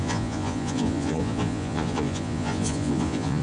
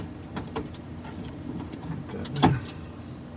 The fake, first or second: first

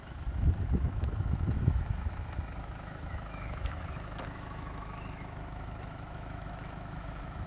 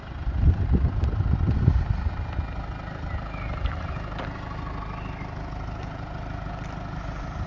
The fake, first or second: first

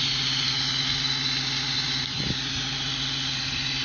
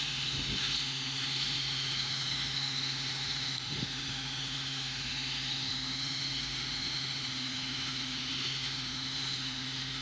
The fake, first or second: second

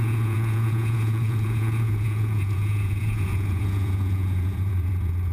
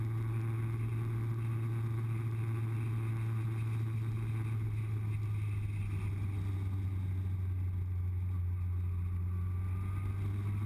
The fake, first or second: first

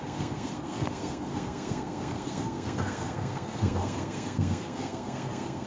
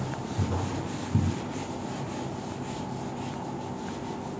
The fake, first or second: first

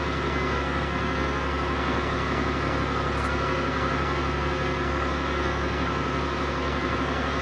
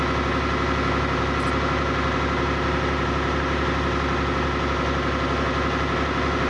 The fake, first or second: first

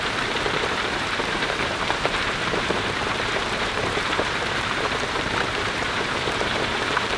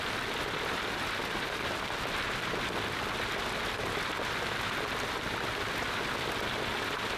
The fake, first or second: first